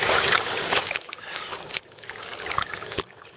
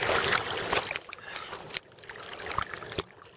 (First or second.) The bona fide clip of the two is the second